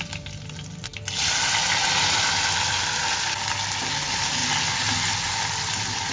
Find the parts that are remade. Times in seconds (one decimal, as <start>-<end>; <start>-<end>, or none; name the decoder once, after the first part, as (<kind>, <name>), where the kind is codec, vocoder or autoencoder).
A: none